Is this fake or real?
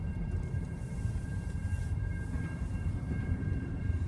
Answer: fake